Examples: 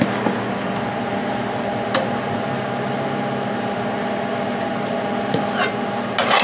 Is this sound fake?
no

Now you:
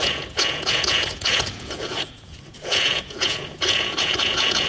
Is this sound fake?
yes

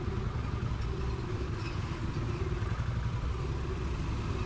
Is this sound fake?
no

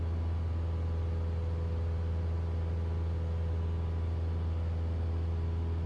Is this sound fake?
no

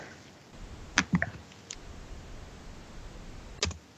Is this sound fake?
no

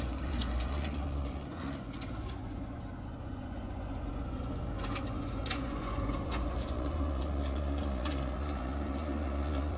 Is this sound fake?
yes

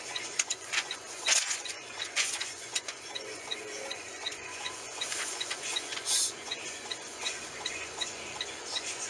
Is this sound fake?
yes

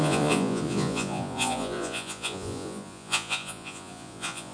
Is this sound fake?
yes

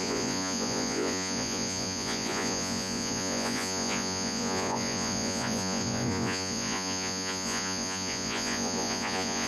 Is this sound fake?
yes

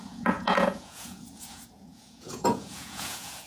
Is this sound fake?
yes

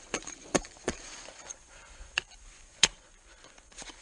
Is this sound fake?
yes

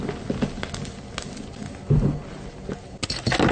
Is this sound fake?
no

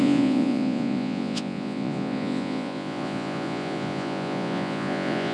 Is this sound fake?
yes